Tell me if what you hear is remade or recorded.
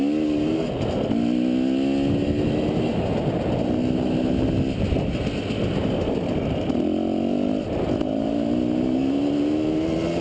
recorded